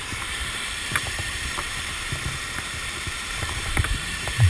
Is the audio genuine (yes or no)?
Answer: no